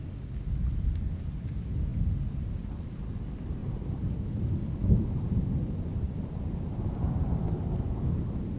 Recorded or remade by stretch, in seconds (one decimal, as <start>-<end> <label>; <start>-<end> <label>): 0.0-3.6 recorded; 3.6-4.5 remade; 4.5-5.9 recorded; 5.9-7.7 remade; 7.7-8.6 recorded